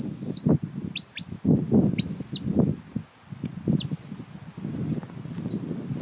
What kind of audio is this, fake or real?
real